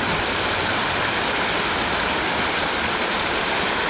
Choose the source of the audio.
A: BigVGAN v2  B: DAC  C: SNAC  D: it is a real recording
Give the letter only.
D